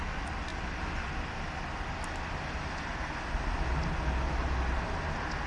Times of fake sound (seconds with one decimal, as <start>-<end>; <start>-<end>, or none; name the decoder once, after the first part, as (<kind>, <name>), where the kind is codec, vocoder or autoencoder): none